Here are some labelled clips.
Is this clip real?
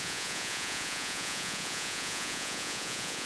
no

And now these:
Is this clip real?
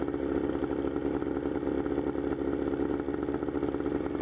yes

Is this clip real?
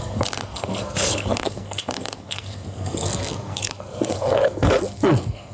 no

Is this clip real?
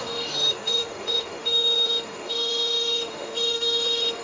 no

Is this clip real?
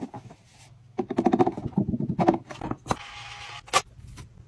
yes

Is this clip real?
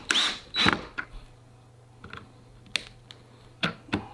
yes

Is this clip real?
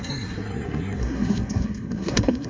no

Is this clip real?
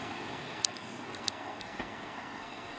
no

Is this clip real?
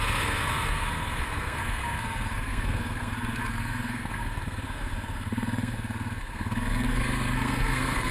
no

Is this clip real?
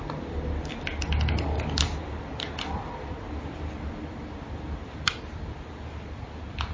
yes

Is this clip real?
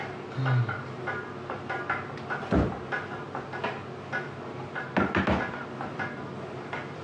yes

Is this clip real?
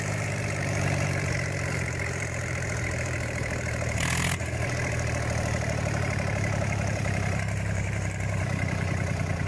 no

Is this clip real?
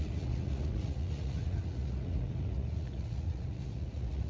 no